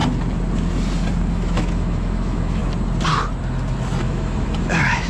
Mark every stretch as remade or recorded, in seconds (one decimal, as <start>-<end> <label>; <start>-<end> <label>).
0.0-1.3 recorded; 1.3-2.6 remade; 2.6-4.0 recorded; 4.0-5.1 remade